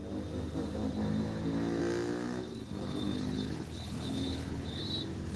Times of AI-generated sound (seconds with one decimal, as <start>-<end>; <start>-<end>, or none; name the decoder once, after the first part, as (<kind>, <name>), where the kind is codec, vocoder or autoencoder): 2.6-4.8 (codec, HILCodec)